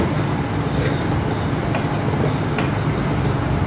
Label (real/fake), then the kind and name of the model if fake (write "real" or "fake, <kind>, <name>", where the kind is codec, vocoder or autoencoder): real